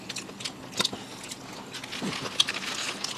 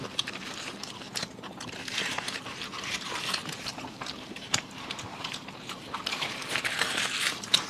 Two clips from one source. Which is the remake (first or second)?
second